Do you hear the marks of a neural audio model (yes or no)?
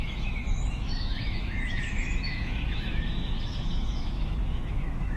yes